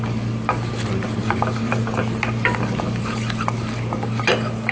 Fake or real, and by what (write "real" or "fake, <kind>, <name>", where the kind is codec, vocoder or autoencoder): real